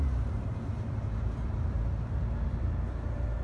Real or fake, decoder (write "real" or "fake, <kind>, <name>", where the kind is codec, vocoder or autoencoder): fake, vocoder, BigVGAN v2